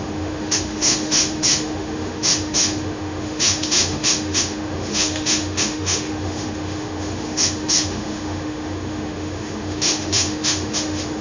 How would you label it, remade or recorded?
remade